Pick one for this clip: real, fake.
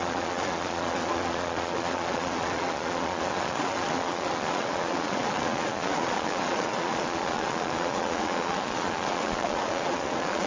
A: fake